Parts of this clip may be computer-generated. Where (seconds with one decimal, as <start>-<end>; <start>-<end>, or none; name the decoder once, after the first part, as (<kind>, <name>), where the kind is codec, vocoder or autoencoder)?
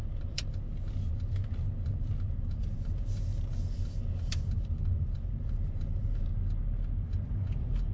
0.0-0.5 (vocoder, BigVGAN v2); 2.4-6.3; 7.1-7.9